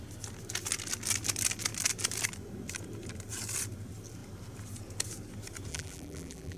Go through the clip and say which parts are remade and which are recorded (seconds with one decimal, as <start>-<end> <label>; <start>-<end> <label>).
0.0-5.7 recorded; 5.7-6.6 remade